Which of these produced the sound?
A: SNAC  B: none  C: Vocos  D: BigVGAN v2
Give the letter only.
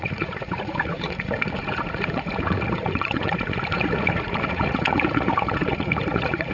C